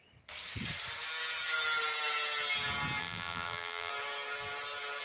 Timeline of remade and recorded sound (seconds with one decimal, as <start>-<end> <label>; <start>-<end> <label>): 0.0-3.0 recorded; 3.0-3.9 remade; 3.9-5.0 recorded